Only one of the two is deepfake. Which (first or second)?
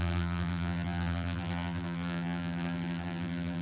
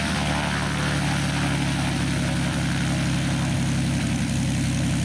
first